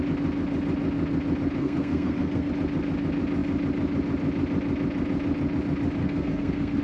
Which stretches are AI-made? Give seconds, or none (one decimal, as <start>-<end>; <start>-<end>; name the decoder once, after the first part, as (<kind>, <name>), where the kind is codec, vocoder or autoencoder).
1.6-2.5 (codec, SNAC); 6.0-6.8

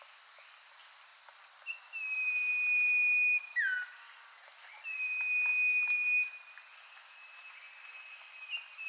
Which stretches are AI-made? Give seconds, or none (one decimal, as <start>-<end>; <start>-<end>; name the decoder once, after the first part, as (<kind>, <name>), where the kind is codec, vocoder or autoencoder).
none

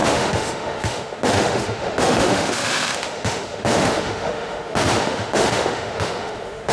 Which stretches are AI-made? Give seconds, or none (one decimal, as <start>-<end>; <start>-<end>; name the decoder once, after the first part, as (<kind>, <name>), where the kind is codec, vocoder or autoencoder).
0.0-6.7 (autoencoder, DAC-VAE)